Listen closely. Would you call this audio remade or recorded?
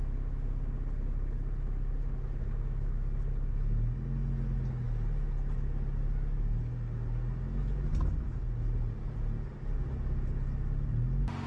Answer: recorded